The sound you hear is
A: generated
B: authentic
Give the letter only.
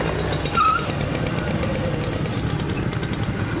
B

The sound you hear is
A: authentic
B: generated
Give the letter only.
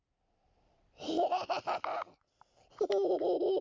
A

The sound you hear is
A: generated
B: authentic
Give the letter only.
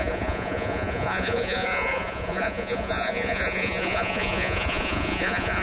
A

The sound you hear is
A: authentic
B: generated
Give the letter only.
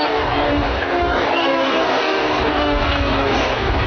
B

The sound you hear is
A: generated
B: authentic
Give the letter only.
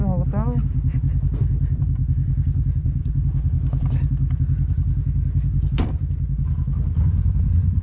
B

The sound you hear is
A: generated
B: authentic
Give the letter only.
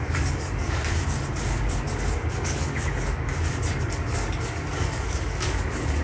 A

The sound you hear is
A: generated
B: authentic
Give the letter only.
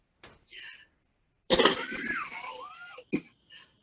B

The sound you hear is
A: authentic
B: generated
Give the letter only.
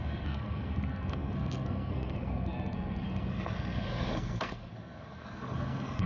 B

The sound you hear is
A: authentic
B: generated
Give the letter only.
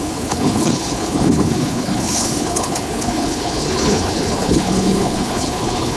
B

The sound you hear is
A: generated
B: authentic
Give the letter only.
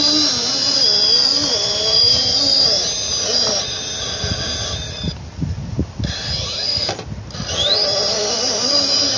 B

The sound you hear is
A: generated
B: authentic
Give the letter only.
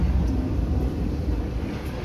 B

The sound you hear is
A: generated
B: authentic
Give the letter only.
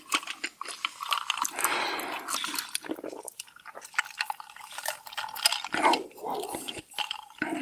B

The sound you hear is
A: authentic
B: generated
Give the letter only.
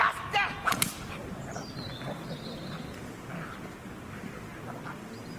A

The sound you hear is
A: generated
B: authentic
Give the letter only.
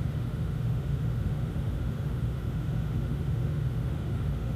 A